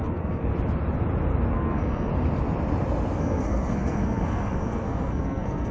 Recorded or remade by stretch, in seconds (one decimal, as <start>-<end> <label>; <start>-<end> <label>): 0.0-0.5 remade; 0.5-1.5 recorded; 1.5-2.1 remade; 2.1-3.2 recorded; 3.2-5.7 remade